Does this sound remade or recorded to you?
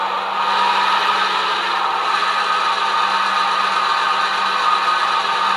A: recorded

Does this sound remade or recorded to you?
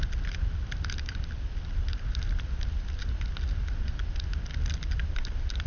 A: recorded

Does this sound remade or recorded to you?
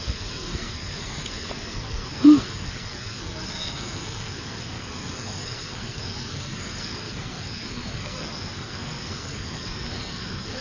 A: remade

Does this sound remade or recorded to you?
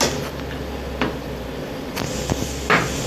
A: recorded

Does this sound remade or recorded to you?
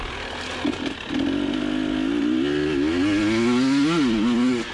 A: recorded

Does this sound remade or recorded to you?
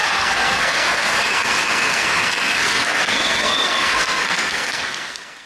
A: remade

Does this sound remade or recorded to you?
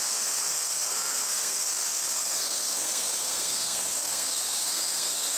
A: remade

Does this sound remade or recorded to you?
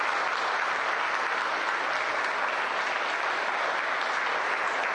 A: recorded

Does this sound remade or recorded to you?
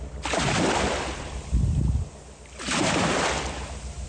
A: recorded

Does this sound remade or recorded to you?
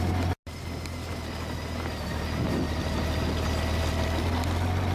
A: recorded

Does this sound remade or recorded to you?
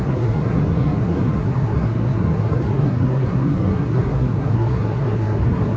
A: remade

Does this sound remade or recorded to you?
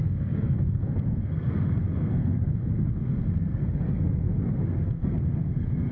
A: remade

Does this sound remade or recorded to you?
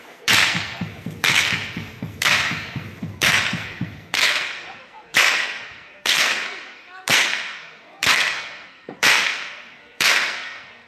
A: remade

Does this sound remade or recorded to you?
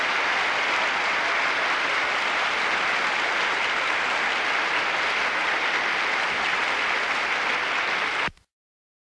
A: recorded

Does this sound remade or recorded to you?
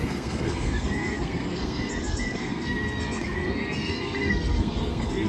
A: remade